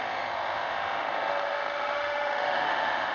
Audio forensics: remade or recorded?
remade